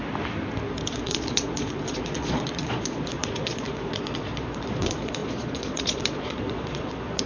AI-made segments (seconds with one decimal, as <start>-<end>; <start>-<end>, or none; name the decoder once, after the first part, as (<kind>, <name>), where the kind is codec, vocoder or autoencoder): 0.9-7.3 (vocoder, Vocos)

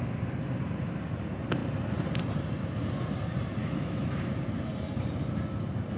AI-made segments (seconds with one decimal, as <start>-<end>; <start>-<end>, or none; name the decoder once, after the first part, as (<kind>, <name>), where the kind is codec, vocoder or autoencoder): 3.6-4.3 (autoencoder, DAC-VAE)

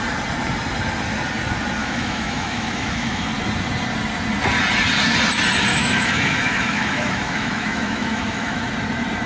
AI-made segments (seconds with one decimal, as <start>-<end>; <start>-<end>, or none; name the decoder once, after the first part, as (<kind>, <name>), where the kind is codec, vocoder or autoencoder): 1.8-3.3 (autoencoder, DAC-VAE); 5.7-8.7

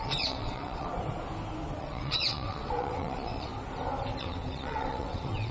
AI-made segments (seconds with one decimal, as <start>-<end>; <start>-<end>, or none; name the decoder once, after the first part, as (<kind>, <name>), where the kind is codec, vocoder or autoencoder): 0.0-0.9 (vocoder, WaveNeXt); 1.8-3.5; 4.2-5.5